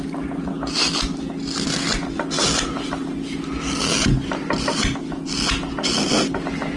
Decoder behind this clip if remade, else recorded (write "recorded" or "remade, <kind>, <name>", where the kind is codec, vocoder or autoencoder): recorded